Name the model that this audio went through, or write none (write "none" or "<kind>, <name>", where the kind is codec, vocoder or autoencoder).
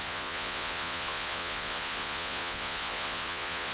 vocoder, Vocos